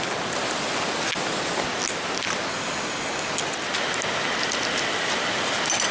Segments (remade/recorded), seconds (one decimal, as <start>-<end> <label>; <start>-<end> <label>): 0.0-2.5 recorded; 2.5-3.3 remade; 3.3-5.9 recorded